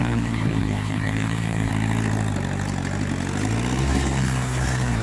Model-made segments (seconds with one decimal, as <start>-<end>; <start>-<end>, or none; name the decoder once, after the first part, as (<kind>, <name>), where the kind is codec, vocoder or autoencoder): 0.0-1.7 (codec, SNAC); 3.8-5.0